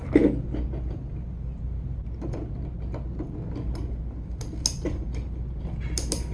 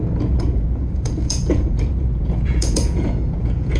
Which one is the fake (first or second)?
second